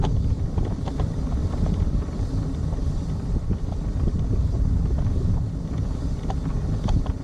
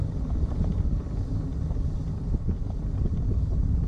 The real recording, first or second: second